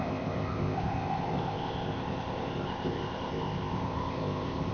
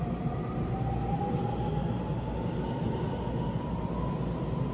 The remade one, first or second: first